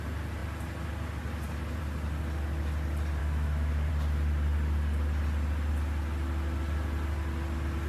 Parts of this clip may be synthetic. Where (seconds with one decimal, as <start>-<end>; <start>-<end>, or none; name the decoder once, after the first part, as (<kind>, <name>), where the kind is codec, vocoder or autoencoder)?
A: 3.2-3.9 (autoencoder, DAC-VAE)